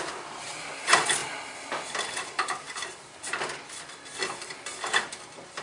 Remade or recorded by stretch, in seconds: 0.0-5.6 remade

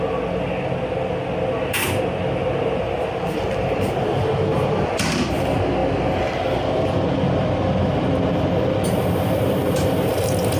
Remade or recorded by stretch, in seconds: 0.0-10.6 recorded

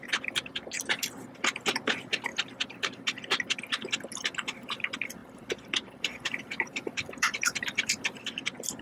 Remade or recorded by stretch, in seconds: 0.0-5.2 recorded; 5.2-8.8 remade

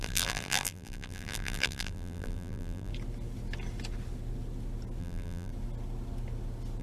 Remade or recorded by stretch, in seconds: 0.0-2.9 remade; 2.9-5.0 recorded; 5.0-5.5 remade; 5.5-6.8 recorded

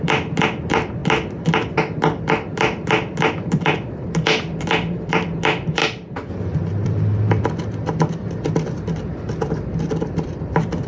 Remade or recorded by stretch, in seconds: 0.0-1.0 remade; 1.0-2.2 recorded; 2.2-5.8 remade; 5.8-6.3 recorded; 6.3-10.9 remade